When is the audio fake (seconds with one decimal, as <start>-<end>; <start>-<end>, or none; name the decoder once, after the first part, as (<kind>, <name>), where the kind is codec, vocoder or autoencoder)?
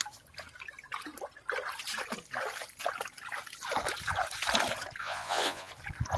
5.0-5.7 (vocoder, Vocos)